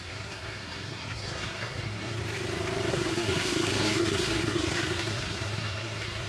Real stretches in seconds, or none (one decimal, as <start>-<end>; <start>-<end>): 2.2-2.9

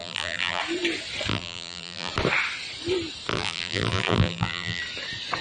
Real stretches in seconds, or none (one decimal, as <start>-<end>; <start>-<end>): 0.6-1.3; 2.1-3.3; 4.8-5.4

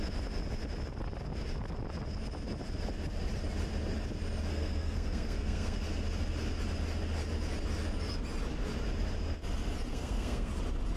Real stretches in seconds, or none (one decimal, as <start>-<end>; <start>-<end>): 0.0-4.5; 5.8-9.9; 10.5-11.0